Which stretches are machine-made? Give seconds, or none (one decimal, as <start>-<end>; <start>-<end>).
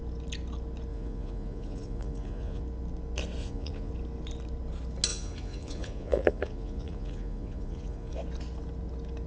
0.9-2.6; 3.4-3.9; 5.1-8.1